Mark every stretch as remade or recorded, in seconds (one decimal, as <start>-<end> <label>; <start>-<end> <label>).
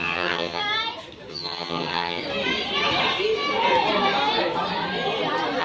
0.0-0.6 remade; 0.6-1.3 recorded; 1.3-2.2 remade; 2.2-5.6 recorded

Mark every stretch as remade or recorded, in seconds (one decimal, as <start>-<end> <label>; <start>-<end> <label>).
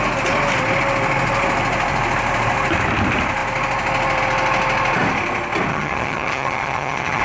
0.0-5.7 recorded; 5.7-7.2 remade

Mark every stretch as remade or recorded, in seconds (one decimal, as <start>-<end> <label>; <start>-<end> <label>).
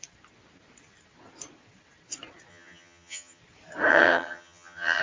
0.0-2.5 recorded; 2.5-3.4 remade; 3.4-3.9 recorded; 3.9-5.0 remade